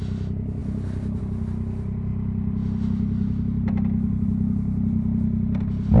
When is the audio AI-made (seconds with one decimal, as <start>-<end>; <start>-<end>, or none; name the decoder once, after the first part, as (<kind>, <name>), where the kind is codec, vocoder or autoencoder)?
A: none